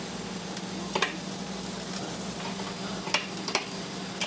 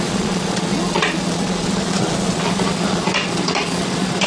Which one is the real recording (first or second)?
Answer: first